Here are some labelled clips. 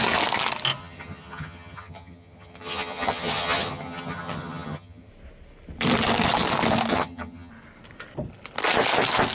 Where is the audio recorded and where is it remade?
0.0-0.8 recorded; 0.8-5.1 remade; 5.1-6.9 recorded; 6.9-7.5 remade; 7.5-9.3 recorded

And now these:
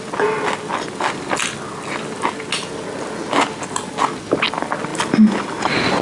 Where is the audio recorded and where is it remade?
0.0-6.0 recorded